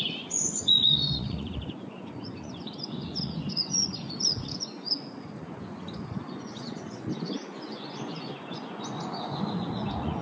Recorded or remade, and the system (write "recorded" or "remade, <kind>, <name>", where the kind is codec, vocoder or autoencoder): remade, vocoder, Vocos